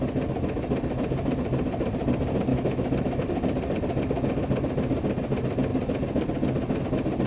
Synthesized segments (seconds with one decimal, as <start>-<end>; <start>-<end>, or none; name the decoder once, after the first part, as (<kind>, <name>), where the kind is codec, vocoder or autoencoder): 2.5-3.2 (autoencoder, DAC-VAE)

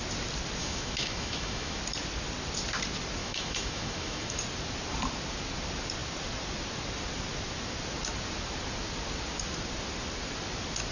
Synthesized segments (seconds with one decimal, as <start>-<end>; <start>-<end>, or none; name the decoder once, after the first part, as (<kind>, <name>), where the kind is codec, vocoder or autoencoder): 0.6-1.8 (autoencoder, DAC-VAE); 3.2-4.4

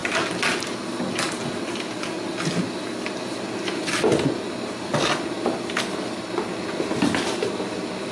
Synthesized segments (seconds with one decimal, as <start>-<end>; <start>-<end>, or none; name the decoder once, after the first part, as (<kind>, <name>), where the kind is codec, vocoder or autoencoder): none

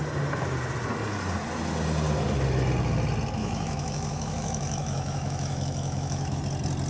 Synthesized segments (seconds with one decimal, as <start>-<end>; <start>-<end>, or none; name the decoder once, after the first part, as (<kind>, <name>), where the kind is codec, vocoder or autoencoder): 3.4-6.4 (autoencoder, DAC-VAE)

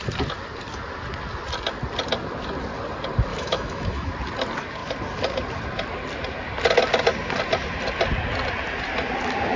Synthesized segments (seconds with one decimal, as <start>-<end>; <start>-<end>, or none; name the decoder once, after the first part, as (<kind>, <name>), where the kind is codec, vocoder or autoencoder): 3.3-4.1 (autoencoder, DAC-VAE)

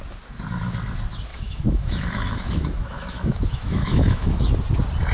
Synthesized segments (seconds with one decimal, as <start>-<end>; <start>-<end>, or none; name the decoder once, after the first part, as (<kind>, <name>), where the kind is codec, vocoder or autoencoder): 1.3-4.4 (autoencoder, DAC-VAE)